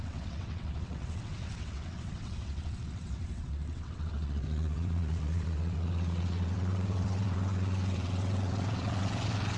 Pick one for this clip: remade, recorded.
remade